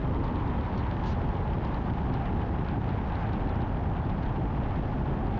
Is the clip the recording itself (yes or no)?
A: yes